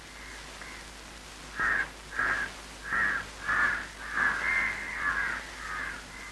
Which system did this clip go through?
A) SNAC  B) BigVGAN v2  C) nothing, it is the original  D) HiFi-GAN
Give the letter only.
C